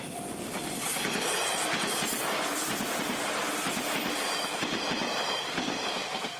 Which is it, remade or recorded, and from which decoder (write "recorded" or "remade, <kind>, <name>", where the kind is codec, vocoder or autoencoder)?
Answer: remade, vocoder, BigVGAN v2